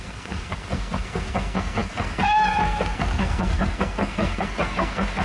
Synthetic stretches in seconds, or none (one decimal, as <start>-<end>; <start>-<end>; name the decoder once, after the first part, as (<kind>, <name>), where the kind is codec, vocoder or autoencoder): 0.0-5.2 (codec, SNAC)